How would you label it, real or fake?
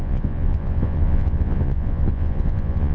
fake